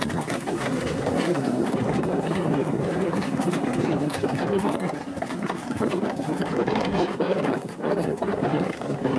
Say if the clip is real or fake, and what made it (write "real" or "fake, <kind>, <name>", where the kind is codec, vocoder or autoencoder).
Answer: fake, codec, SNAC